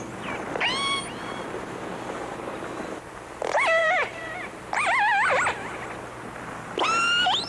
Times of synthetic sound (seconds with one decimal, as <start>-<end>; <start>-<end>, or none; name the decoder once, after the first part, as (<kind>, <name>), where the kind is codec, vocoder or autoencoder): 3.8-4.6 (vocoder, BigVGAN v2)